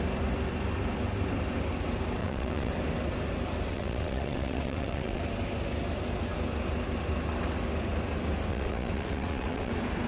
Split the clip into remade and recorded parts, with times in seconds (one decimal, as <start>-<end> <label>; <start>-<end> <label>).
0.0-2.2 recorded; 2.2-2.7 remade; 2.7-3.7 recorded; 3.7-5.2 remade; 5.2-8.5 recorded; 8.5-9.7 remade; 9.7-10.1 recorded